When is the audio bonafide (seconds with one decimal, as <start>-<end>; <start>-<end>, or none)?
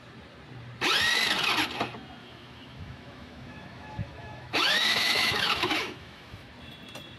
0.0-2.2; 6.5-7.2